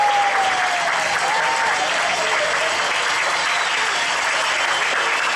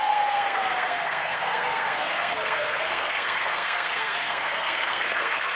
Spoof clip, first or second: second